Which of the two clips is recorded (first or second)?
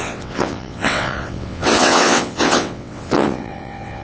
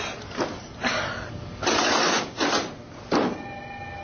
second